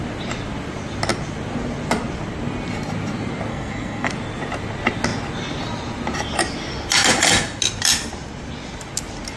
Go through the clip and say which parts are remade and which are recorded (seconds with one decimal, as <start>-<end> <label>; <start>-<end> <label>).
0.0-3.5 recorded; 3.5-4.1 remade; 4.1-9.4 recorded